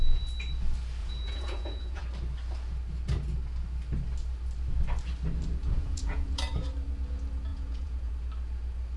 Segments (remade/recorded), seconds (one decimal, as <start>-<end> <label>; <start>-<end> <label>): 0.0-1.0 recorded; 1.0-2.0 remade; 2.0-5.6 recorded; 5.6-6.4 remade; 6.4-7.5 recorded; 7.5-8.1 remade; 8.1-9.0 recorded